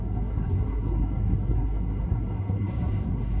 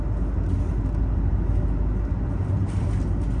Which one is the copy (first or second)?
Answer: first